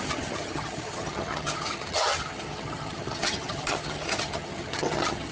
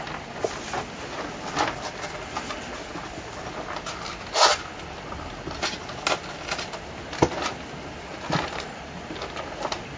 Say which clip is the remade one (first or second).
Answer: first